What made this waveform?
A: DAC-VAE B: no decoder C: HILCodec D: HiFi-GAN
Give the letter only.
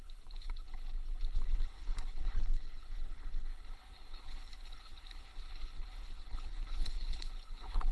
C